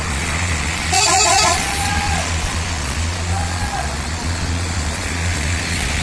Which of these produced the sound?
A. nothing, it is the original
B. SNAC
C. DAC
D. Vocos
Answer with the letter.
D